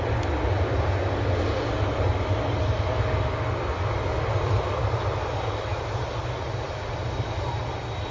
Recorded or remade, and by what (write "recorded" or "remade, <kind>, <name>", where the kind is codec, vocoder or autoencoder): recorded